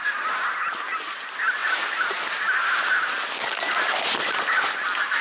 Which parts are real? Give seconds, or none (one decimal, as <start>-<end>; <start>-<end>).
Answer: 0.0-5.2